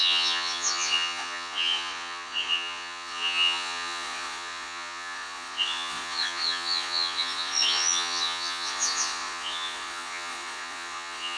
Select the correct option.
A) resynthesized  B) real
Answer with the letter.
A